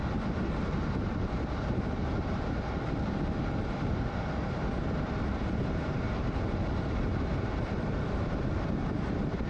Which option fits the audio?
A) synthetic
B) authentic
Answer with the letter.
A